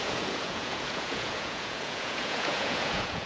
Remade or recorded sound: remade